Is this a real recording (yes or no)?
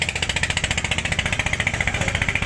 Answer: yes